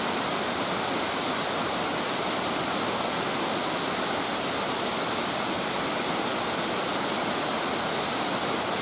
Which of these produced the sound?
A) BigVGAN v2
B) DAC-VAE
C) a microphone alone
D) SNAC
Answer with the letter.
C